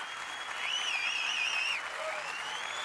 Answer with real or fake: real